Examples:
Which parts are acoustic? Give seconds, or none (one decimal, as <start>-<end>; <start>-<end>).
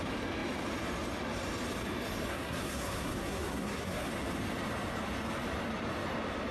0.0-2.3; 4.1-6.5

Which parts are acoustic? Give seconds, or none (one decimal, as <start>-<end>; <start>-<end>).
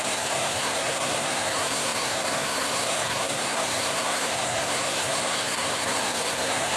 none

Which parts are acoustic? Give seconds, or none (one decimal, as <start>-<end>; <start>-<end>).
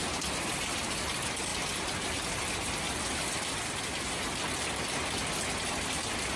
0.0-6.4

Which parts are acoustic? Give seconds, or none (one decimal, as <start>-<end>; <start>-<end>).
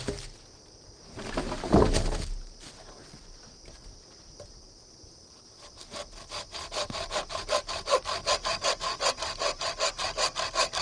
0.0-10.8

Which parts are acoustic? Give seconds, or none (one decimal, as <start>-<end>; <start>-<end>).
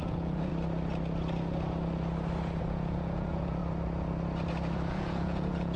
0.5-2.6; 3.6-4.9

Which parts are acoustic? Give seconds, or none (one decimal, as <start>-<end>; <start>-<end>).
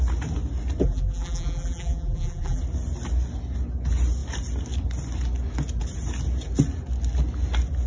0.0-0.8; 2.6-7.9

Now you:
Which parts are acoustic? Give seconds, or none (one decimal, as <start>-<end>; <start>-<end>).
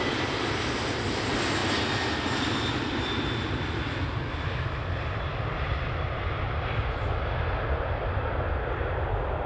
0.0-9.5